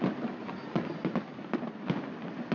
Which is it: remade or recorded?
remade